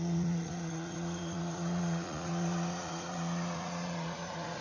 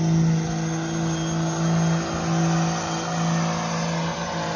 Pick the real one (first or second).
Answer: second